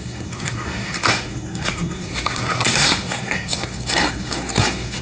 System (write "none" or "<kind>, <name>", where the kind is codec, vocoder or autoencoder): codec, SNAC